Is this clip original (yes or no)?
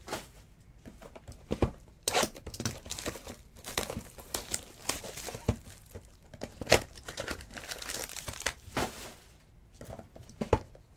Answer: no